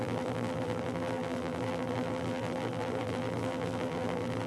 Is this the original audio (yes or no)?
no